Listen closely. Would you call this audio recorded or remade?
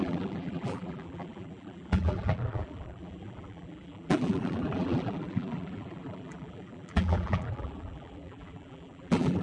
remade